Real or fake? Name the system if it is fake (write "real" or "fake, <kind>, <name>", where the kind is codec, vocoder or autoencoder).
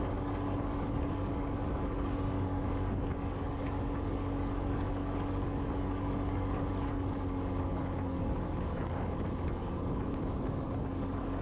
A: fake, codec, DAC